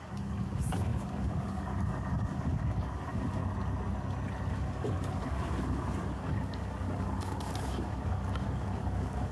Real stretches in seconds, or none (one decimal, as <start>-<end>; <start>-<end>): 3.4-4.5